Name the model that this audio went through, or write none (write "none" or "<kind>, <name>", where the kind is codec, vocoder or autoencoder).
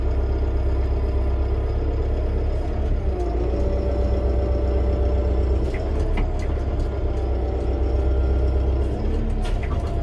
none